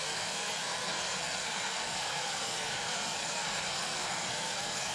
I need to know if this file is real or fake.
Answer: fake